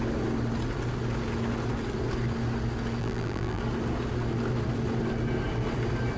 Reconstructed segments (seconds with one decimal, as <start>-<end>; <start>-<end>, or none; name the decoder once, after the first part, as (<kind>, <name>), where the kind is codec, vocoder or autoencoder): 3.0-3.6 (vocoder, BigVGAN v2)